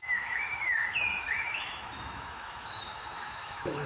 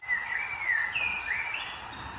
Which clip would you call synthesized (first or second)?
first